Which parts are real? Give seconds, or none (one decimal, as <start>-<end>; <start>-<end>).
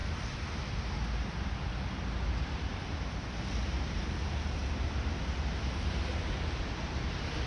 0.0-7.5